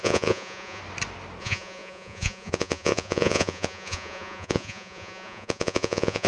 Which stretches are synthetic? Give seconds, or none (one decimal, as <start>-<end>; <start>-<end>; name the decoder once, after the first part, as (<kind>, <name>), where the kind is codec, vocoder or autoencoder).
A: 0.0-0.8 (vocoder, Vocos); 1.4-6.3

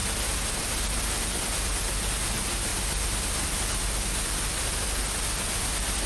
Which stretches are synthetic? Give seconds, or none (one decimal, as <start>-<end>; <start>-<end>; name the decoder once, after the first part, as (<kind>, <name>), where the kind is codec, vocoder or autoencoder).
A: none

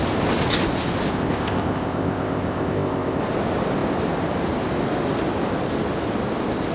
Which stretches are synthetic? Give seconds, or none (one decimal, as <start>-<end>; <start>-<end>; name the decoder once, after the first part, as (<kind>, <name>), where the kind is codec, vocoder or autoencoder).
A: 1.1-3.2 (codec, ZipCodec)

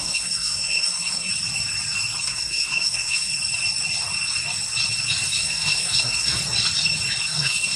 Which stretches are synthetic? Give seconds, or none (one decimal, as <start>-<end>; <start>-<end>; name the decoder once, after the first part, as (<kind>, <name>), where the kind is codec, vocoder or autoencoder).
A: 0.0-1.3 (codec, SNAC); 2.2-3.3; 5.4-6.4; 7.3-7.8

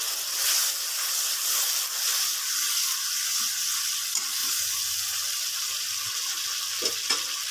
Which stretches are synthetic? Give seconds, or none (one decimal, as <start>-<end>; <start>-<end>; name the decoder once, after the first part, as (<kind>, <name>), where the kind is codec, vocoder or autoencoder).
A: none

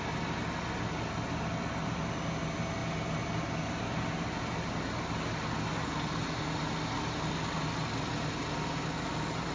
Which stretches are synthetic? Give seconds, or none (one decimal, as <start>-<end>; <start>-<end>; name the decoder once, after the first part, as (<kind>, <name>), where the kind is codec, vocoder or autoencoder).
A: none